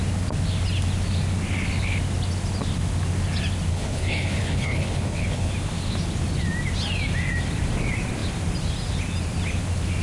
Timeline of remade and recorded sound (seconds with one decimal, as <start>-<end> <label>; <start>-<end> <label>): 0.0-3.7 recorded; 3.7-5.5 remade; 5.5-10.0 recorded